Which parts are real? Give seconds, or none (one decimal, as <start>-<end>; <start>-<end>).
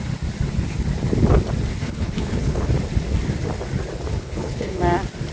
0.0-1.7; 2.7-4.1; 4.8-5.3